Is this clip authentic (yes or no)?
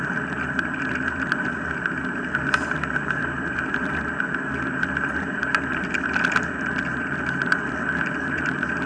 no